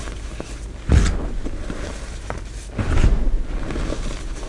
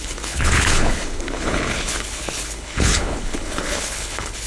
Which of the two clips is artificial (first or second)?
second